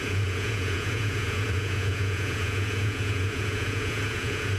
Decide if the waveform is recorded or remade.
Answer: remade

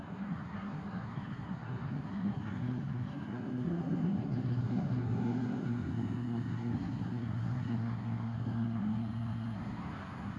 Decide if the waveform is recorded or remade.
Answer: remade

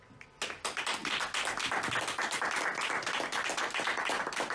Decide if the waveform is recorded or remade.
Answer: recorded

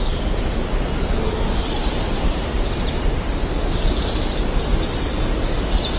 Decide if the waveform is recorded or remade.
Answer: recorded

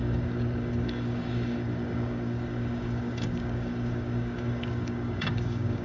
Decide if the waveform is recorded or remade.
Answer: remade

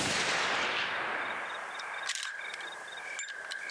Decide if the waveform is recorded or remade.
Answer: remade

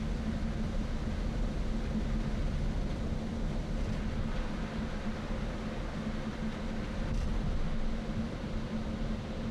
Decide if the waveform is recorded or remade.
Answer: recorded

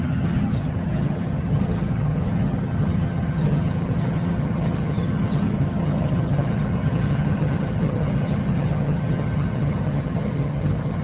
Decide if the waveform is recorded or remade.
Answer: remade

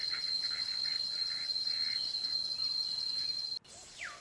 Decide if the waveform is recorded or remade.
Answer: recorded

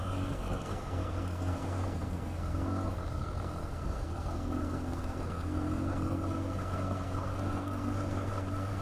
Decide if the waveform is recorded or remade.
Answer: remade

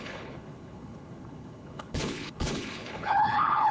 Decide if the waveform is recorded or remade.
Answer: remade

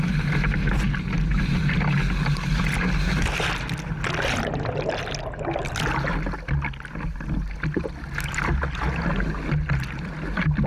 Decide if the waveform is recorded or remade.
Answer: recorded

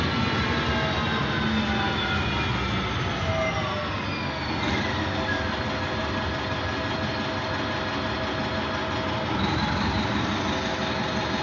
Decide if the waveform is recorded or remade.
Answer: recorded